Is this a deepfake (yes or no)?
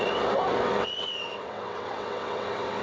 yes